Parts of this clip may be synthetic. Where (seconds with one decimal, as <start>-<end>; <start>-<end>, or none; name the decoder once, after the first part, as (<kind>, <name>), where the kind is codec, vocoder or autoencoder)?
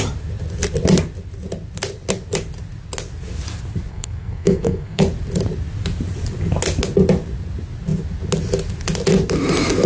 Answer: 3.9-5.0 (codec, SNAC)